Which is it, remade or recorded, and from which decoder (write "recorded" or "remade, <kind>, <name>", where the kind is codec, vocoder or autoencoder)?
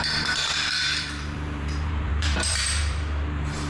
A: remade, vocoder, BigVGAN v2